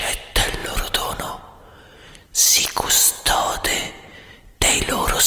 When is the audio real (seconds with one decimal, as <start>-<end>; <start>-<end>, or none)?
0.0-0.6; 3.2-4.1; 4.8-5.3